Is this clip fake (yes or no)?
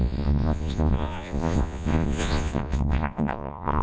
yes